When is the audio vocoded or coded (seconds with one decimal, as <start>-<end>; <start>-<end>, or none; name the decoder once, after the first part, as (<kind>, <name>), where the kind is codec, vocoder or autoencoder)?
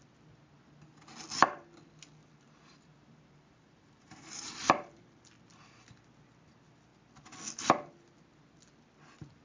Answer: 2.2-5.2 (vocoder, BigVGAN v2)